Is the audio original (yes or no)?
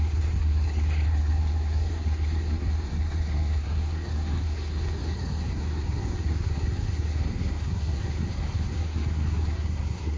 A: no